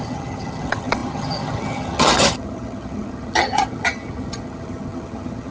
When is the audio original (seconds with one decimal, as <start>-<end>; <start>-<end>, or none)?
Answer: none